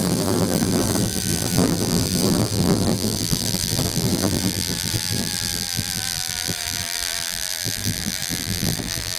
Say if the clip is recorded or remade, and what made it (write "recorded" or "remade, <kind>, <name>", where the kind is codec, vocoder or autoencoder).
remade, vocoder, BigVGAN v2